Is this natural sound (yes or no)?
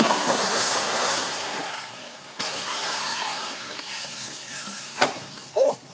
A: no